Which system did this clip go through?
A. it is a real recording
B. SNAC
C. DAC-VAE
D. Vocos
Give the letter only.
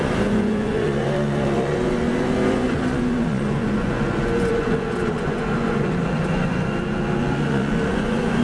D